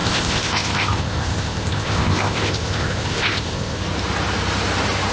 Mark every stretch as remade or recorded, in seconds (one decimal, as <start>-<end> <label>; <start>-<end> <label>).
0.0-3.8 remade; 3.8-5.1 recorded